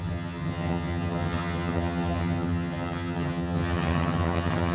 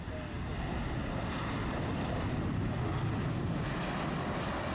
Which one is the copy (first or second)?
first